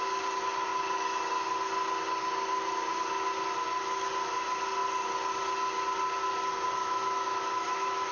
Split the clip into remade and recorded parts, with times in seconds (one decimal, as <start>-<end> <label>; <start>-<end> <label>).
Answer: 0.0-6.8 recorded; 6.8-8.1 remade